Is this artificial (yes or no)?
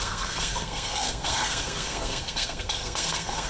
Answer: yes